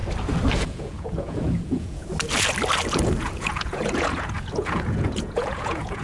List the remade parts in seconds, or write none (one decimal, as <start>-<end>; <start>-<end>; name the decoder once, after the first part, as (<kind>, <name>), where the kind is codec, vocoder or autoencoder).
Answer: 0.6-2.0 (vocoder, Vocos); 2.9-6.0